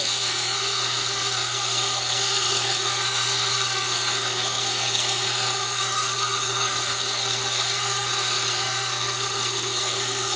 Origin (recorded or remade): remade